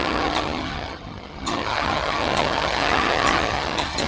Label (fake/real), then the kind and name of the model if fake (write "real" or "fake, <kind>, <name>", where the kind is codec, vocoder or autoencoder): fake, vocoder, HiFi-GAN